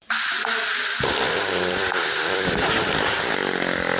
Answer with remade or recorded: remade